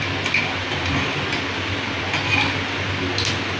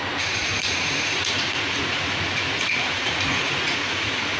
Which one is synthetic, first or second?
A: second